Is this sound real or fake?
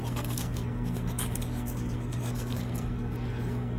fake